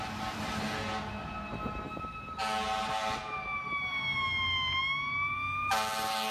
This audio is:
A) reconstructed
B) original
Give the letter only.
B